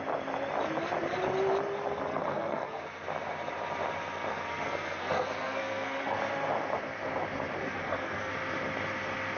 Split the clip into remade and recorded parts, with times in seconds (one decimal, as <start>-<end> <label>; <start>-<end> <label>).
0.0-2.1 recorded; 2.1-2.8 remade; 2.8-4.3 recorded; 4.3-6.2 remade; 6.2-7.6 recorded; 7.6-8.3 remade; 8.3-9.4 recorded